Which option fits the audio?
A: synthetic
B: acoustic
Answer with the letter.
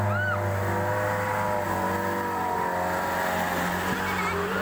B